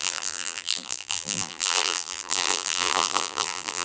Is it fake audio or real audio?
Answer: fake